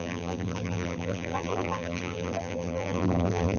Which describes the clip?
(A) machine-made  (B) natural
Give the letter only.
A